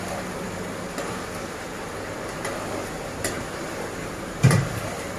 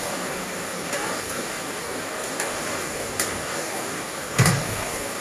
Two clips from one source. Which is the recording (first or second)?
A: first